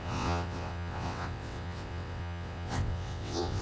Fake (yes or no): yes